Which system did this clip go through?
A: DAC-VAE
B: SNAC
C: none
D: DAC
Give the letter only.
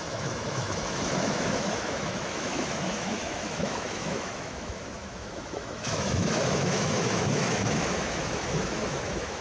A